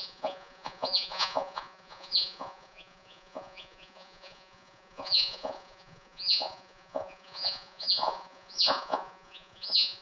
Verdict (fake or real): fake